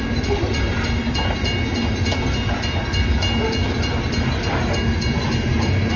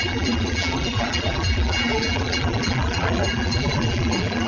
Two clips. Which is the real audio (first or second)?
first